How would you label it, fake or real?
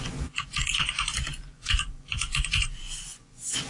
fake